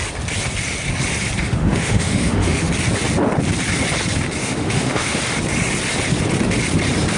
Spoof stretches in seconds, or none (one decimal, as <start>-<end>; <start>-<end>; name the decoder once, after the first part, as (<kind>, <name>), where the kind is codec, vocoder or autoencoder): 1.4-2.7 (autoencoder, DAC-VAE); 4.4-5.2